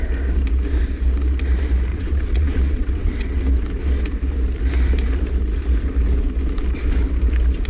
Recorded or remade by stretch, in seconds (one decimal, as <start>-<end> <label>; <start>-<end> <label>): 0.0-1.9 recorded; 1.9-3.4 remade; 3.4-7.7 recorded